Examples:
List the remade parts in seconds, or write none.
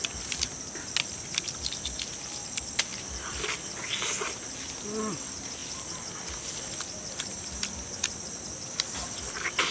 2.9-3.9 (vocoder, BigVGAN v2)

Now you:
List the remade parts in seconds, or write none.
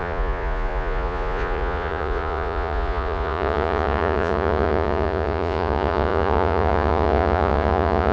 0.0-8.1 (vocoder, Vocos)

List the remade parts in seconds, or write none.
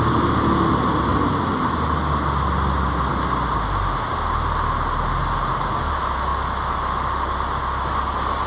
none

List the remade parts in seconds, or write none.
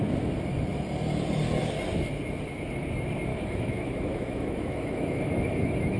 3.3-6.0 (autoencoder, DAC-VAE)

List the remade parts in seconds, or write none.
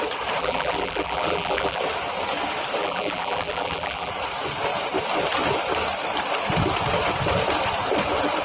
0.4-1.8 (vocoder, BigVGAN v2); 2.8-4.1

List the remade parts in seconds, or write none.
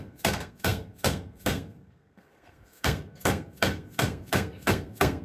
0.0-5.2 (codec, SNAC)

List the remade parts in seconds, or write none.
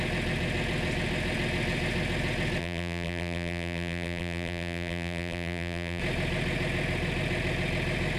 2.6-6.0 (vocoder, BigVGAN v2)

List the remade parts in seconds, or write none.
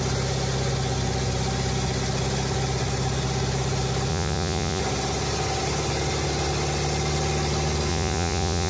4.1-4.8 (vocoder, Vocos); 7.9-8.7